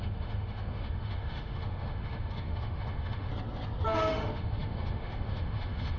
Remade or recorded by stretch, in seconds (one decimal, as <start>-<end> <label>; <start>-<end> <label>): 0.0-3.3 remade; 3.3-4.1 recorded; 4.1-6.0 remade